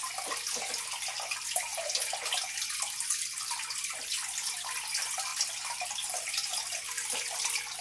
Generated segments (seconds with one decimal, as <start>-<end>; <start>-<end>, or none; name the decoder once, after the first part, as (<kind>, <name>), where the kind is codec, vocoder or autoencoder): none